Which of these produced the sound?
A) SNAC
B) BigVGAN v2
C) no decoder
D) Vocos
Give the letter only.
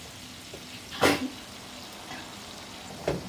C